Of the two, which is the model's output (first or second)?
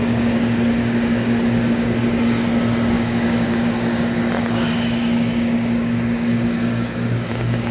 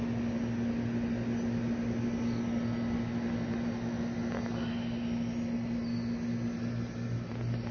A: first